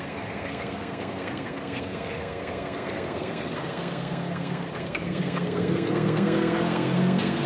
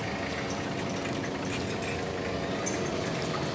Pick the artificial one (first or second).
first